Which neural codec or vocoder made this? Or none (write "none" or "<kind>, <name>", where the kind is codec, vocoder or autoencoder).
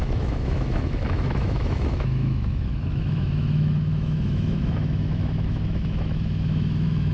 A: autoencoder, DAC-VAE